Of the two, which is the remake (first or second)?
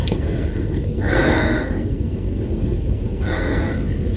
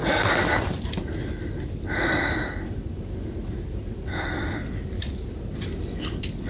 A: first